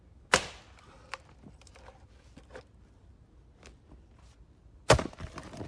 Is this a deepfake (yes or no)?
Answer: no